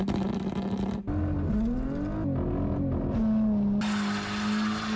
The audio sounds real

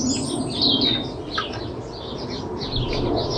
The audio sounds real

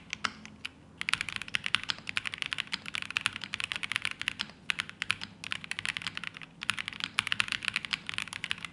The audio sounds real